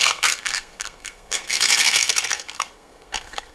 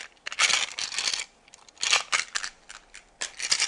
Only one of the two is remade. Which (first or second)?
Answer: first